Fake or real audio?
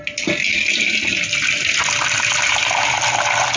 real